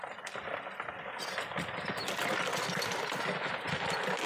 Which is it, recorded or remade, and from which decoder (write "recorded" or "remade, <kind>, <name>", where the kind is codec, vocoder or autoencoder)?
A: recorded